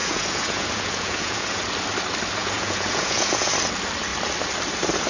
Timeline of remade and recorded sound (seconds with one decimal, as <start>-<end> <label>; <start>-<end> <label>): 0.0-1.6 remade; 1.6-2.4 recorded; 2.4-3.5 remade; 3.5-5.1 recorded